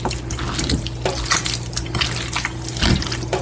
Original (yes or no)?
yes